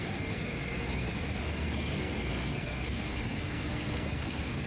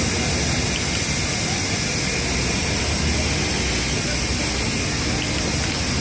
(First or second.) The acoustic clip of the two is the second